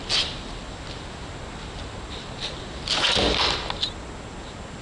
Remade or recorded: recorded